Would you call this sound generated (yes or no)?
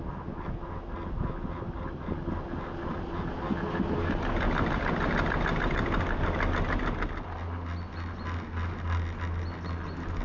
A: no